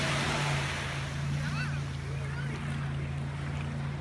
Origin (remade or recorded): recorded